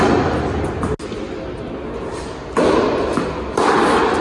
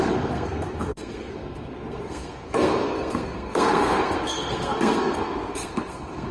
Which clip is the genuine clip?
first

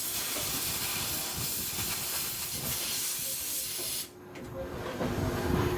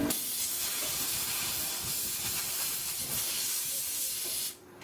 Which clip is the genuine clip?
first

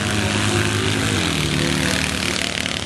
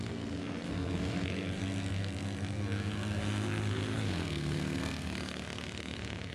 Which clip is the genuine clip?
first